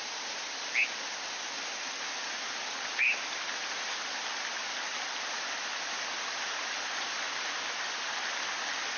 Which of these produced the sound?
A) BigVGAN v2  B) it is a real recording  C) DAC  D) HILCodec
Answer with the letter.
B